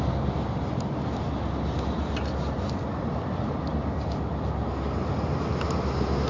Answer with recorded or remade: recorded